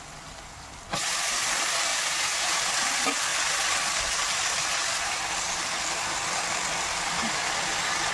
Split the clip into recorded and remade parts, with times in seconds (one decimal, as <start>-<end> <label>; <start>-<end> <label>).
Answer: 0.0-1.9 recorded; 1.9-2.7 remade; 2.7-8.1 recorded